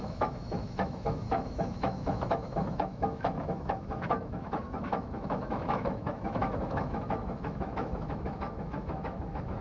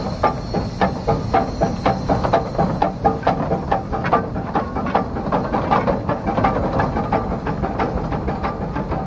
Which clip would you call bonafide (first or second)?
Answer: second